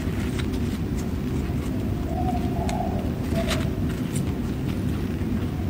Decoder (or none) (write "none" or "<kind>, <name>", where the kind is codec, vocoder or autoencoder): none